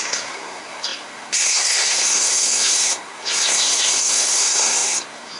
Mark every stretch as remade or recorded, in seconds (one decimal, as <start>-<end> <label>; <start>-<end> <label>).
0.0-5.4 remade